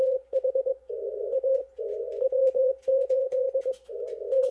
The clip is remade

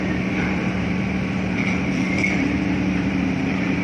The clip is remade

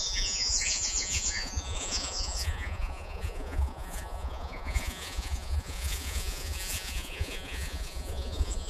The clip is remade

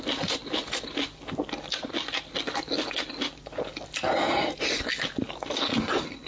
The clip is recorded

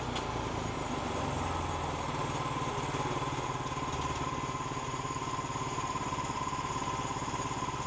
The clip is recorded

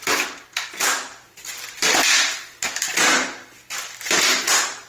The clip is recorded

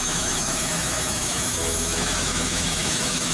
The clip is remade